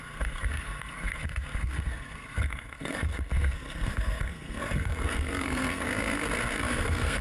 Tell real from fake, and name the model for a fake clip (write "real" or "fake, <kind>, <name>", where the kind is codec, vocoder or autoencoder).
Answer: fake, codec, SNAC